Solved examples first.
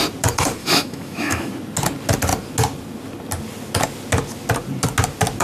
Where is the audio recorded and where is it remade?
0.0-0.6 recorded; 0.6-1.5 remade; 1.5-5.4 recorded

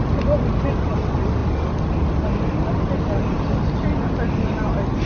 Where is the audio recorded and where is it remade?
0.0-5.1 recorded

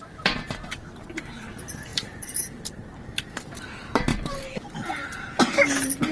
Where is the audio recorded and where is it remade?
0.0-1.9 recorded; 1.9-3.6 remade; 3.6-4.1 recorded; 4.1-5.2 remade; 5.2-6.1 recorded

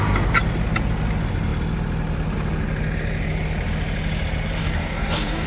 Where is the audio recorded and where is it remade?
0.0-4.6 recorded; 4.6-5.5 remade